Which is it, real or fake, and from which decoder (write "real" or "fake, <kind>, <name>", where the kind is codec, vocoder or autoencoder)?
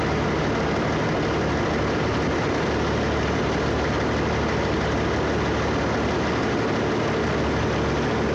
real